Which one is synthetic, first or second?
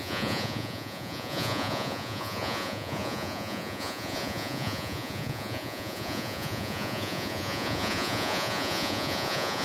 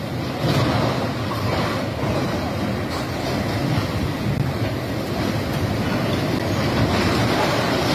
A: first